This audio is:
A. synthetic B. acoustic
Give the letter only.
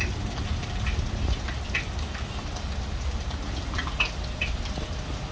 B